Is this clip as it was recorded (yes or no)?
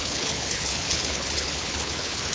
no